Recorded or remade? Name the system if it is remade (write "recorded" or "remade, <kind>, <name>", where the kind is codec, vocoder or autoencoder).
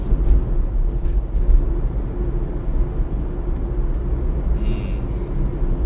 recorded